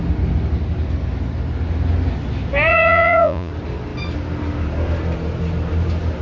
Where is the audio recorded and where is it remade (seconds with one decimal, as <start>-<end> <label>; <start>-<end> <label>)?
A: 0.0-2.7 recorded; 2.7-3.5 remade; 3.5-6.2 recorded